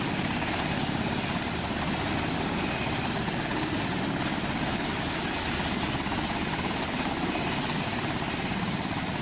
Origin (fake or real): real